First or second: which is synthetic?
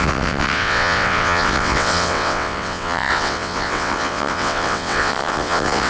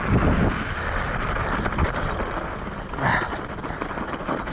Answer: first